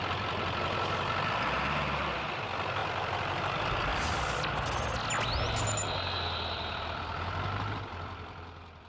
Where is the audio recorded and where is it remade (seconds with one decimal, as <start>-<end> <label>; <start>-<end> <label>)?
0.0-3.9 remade; 3.9-6.7 recorded; 6.7-8.9 remade